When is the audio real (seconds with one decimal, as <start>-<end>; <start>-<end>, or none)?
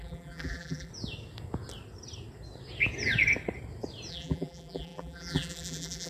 0.9-4.1